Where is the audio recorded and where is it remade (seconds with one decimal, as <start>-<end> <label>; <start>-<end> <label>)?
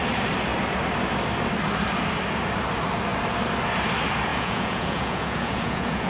0.0-4.3 recorded; 4.3-6.1 remade